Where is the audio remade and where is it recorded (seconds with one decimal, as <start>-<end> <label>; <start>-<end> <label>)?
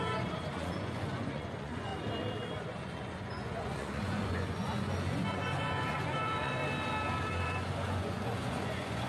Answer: 0.0-1.9 remade; 1.9-2.5 recorded; 2.5-6.6 remade; 6.6-7.3 recorded; 7.3-9.1 remade